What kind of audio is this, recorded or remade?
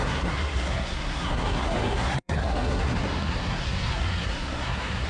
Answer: remade